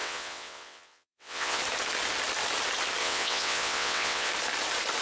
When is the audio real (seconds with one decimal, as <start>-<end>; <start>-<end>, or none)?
1.6-3.0; 4.3-5.0